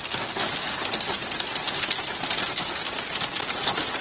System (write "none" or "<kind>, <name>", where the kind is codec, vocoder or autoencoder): none